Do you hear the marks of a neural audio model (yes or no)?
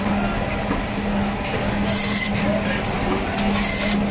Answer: no